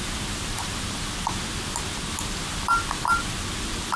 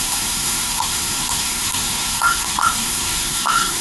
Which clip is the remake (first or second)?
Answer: second